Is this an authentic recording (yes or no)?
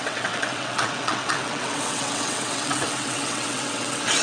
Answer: no